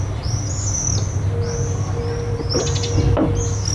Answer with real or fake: real